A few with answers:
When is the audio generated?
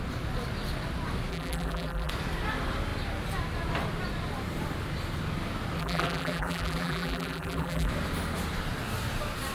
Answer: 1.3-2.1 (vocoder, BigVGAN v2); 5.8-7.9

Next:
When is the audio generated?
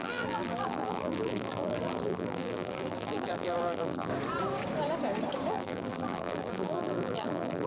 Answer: 0.0-4.1 (vocoder, BigVGAN v2); 5.5-7.7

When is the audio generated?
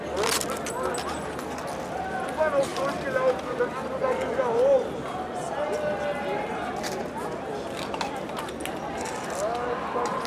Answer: none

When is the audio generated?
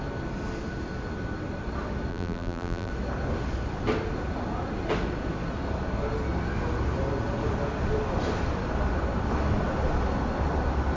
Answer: 2.1-2.9 (vocoder, BigVGAN v2)